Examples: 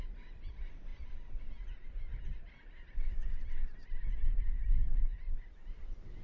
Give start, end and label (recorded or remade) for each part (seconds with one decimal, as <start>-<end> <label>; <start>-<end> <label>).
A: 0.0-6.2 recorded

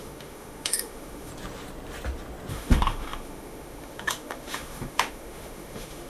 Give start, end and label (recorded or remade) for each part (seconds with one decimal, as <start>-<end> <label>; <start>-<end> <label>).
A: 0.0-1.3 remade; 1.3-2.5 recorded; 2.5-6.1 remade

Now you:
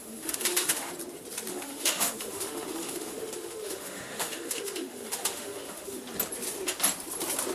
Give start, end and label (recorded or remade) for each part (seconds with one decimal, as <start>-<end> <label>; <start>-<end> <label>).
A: 0.0-0.9 remade; 0.9-1.5 recorded; 1.5-6.0 remade; 6.0-7.5 recorded

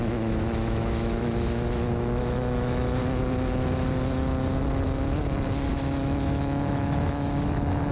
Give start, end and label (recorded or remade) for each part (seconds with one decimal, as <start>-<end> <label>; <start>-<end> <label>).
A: 0.0-3.0 remade; 3.0-5.7 recorded; 5.7-7.9 remade

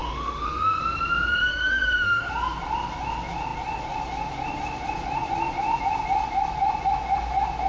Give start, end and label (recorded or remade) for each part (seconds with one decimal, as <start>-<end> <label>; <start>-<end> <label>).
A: 0.0-0.8 remade; 0.8-1.3 recorded; 1.3-2.3 remade; 2.3-7.7 recorded

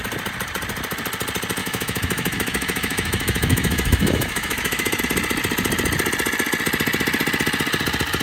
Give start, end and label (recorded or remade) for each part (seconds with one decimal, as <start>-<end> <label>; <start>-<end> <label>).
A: 0.0-1.6 recorded; 1.6-5.0 remade; 5.0-8.2 recorded